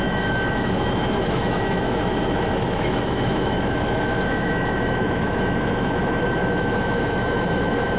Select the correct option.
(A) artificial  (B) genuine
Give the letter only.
A